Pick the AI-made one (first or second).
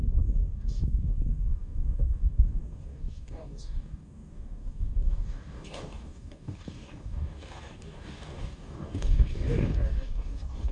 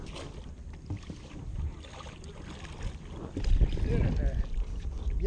first